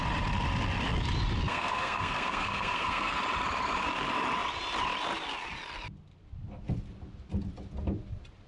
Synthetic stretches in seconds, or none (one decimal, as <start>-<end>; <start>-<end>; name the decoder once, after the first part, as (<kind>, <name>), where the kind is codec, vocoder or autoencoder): 1.5-3.2 (codec, SNAC)